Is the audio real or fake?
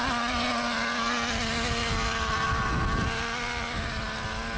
real